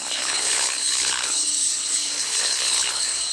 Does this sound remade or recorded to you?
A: remade